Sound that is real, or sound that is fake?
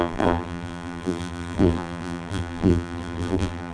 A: fake